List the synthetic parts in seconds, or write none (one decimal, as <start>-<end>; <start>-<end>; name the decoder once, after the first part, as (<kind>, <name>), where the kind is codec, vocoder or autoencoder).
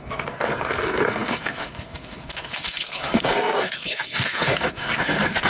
0.0-5.5 (codec, SNAC)